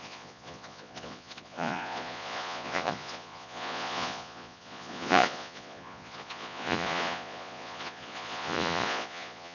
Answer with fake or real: fake